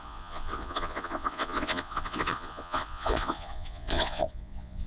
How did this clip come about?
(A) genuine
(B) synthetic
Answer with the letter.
B